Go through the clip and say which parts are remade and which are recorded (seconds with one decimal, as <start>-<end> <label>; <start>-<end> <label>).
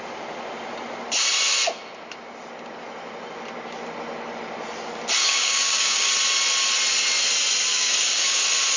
0.0-5.2 recorded; 5.2-6.1 remade; 6.1-7.7 recorded; 7.7-8.4 remade; 8.4-8.8 recorded